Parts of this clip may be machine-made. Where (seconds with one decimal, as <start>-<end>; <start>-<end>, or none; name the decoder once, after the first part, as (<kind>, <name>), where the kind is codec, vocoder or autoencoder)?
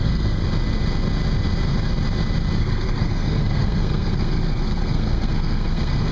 0.0-0.4 (codec, SNAC); 2.6-6.1